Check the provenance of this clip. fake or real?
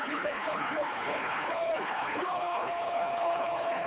fake